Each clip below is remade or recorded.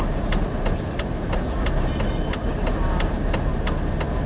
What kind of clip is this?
recorded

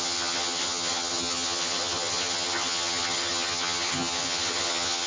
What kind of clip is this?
remade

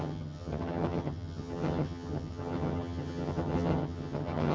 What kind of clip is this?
remade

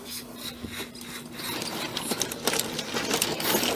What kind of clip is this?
recorded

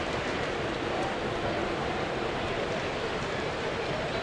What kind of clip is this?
remade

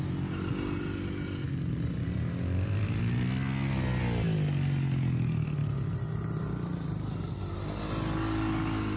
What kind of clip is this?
recorded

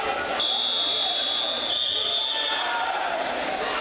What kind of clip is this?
recorded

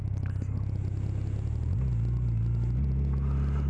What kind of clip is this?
recorded